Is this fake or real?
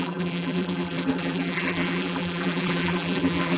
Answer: fake